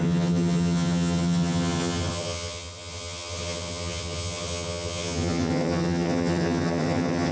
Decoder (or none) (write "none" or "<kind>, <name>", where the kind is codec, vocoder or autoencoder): vocoder, HiFi-GAN